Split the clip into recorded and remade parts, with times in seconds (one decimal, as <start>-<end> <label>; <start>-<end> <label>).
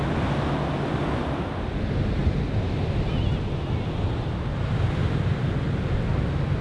0.0-6.6 recorded